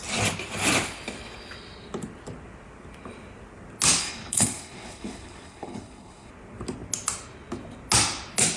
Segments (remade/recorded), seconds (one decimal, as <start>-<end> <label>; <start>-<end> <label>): 0.0-4.0 recorded; 4.0-6.3 remade; 6.3-8.6 recorded